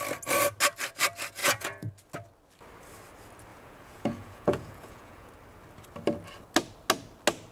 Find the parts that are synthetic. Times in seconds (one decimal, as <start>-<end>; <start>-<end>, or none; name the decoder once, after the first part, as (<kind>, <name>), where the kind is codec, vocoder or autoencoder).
1.4-1.9 (vocoder, Vocos); 3.5-5.3